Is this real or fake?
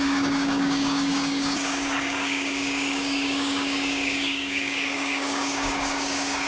fake